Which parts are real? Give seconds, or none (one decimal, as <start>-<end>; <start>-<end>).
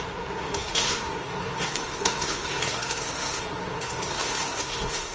none